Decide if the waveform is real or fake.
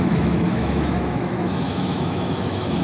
fake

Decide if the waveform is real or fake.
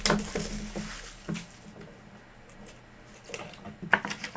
real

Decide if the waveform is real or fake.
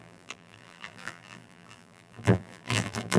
fake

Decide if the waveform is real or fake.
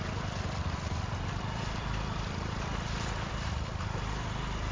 fake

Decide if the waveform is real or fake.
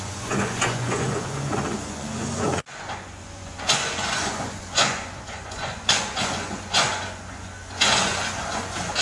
fake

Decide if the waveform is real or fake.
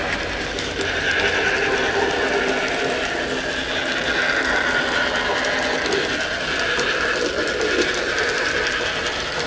real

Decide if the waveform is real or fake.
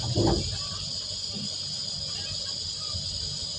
real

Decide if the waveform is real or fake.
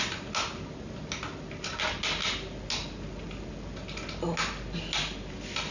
real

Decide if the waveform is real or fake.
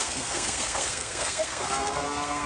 fake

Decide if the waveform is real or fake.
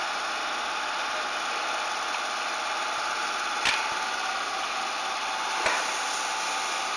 real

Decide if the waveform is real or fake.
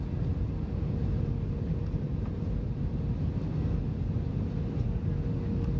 real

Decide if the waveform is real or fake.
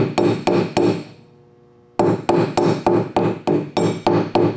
real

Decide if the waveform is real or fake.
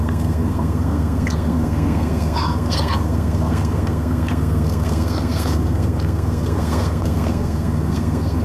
fake